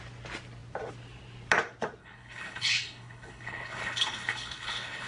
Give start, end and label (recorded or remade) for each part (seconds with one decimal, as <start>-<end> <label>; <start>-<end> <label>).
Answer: 0.0-2.0 recorded; 2.0-5.1 remade